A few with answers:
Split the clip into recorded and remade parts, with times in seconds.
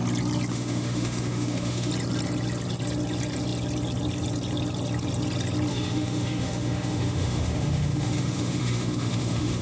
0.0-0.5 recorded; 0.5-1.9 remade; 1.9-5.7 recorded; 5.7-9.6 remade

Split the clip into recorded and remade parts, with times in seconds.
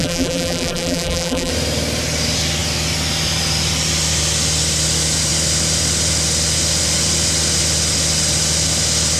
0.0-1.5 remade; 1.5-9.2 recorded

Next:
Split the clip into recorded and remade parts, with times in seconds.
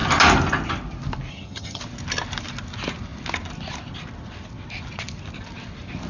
0.0-1.3 recorded; 1.3-1.8 remade; 1.8-6.1 recorded